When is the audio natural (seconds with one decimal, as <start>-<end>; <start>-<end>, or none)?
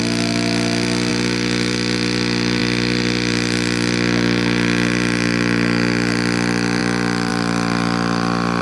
0.0-8.6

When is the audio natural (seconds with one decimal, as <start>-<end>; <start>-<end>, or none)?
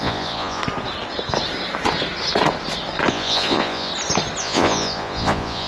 0.6-3.1; 3.9-4.4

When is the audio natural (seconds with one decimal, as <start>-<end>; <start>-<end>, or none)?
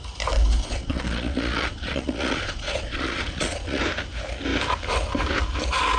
0.0-0.7; 3.8-6.0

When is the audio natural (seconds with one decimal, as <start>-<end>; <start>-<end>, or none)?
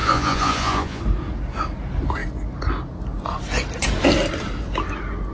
1.0-5.3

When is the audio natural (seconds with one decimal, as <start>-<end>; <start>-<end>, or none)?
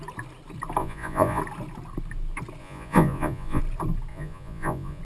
0.0-0.8; 1.4-2.6; 3.6-4.1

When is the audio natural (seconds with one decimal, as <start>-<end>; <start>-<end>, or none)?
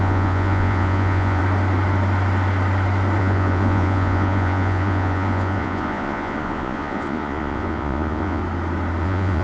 1.4-3.2; 8.4-9.0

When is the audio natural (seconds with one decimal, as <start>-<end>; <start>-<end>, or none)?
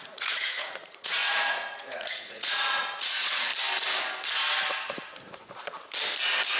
3.5-6.6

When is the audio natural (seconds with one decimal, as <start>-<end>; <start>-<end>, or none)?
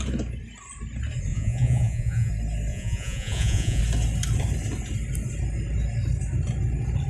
0.0-1.3; 2.3-2.7; 3.8-7.1